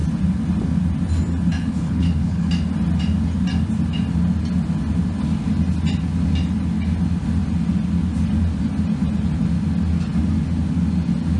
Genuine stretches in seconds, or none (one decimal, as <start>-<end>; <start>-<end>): 0.0-1.6; 2.5-11.4